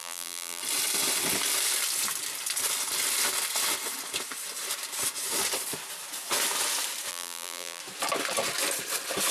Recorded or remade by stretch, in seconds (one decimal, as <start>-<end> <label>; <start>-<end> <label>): 0.0-0.6 remade; 0.6-7.1 recorded; 7.1-7.8 remade; 7.8-9.3 recorded